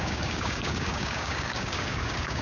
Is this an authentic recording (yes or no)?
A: no